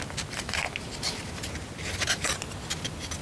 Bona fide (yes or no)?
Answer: yes